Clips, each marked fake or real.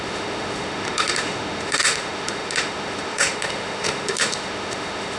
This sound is fake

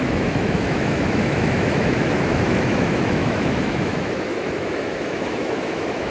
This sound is fake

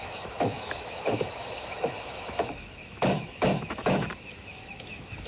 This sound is fake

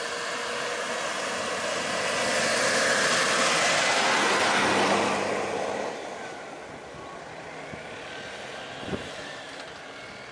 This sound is real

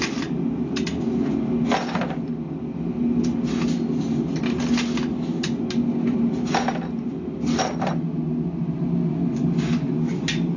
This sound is real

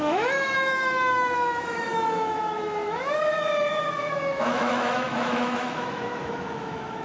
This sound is fake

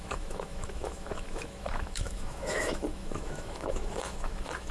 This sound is fake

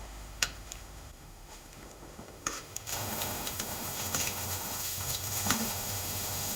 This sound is fake